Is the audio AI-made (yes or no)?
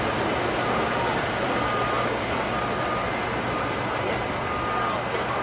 no